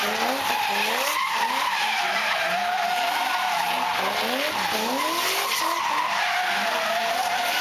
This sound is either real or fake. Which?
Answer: real